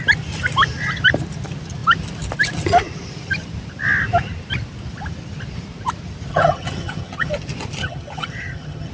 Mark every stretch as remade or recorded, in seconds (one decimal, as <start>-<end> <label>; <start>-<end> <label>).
0.0-6.3 recorded; 6.3-7.3 remade; 7.3-7.8 recorded; 7.8-8.9 remade